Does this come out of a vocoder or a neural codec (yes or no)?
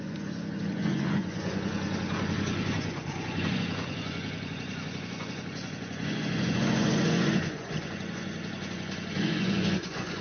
yes